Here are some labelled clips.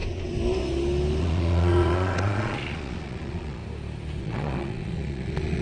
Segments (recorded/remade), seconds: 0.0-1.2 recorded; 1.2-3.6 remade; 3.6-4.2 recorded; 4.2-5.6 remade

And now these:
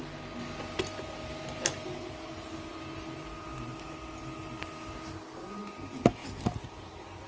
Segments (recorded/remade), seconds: 0.0-7.3 recorded

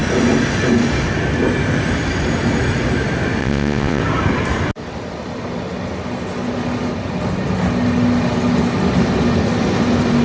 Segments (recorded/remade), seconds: 0.0-3.4 recorded; 3.4-4.0 remade; 4.0-10.2 recorded

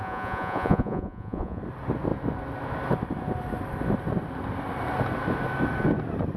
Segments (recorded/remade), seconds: 0.0-1.6 remade; 1.6-6.4 recorded

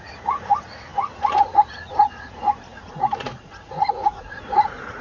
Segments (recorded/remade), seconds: 0.0-5.0 remade

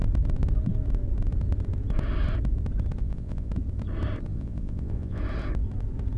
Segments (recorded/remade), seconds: 0.0-3.0 recorded; 3.0-3.5 remade; 3.5-4.3 recorded; 4.3-5.2 remade; 5.2-6.2 recorded

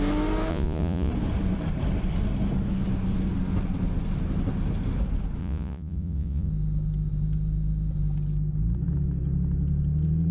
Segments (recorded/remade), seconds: 0.0-0.5 recorded; 0.5-1.1 remade; 1.1-5.4 recorded; 5.4-6.5 remade; 6.5-10.3 recorded

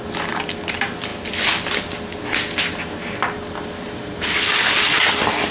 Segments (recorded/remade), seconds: 0.0-5.5 recorded